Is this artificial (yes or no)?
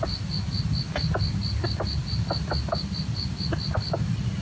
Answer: no